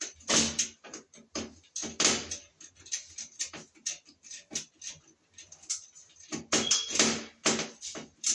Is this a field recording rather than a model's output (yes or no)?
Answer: yes